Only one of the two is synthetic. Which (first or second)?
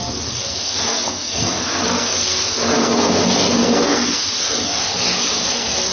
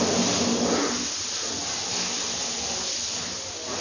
first